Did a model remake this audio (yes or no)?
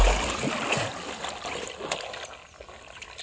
no